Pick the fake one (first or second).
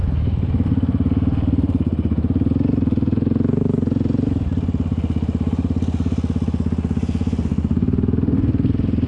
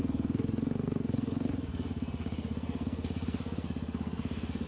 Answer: second